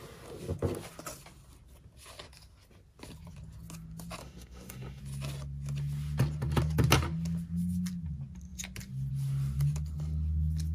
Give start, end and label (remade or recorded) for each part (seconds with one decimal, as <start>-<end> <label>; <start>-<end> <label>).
0.0-4.2 recorded; 4.2-5.0 remade; 5.0-10.7 recorded